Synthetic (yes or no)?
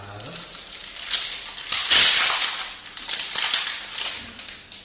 no